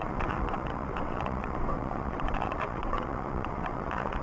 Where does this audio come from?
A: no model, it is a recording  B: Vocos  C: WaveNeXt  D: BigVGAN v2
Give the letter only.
C